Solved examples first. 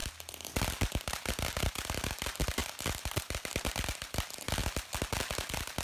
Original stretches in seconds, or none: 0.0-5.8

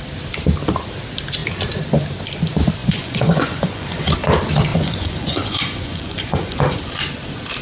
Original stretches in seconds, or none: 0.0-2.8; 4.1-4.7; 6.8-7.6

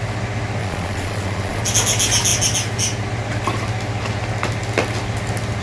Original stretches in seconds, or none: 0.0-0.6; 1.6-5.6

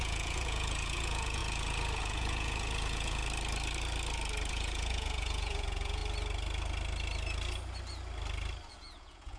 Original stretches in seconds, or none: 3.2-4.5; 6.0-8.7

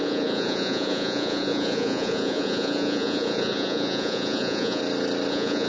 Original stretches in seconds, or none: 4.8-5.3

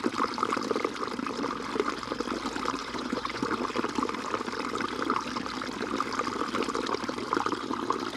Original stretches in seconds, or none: 0.0-2.8; 3.4-8.2